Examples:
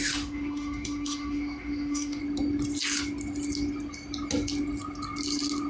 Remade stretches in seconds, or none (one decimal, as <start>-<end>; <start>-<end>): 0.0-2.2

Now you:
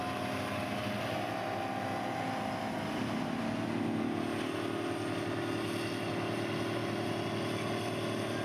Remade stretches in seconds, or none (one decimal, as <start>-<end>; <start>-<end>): none

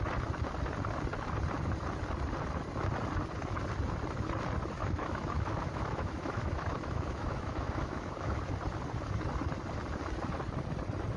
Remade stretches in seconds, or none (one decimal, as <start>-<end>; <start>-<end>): 4.8-8.5

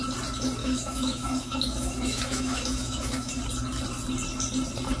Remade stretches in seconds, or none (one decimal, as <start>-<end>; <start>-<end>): 0.6-3.4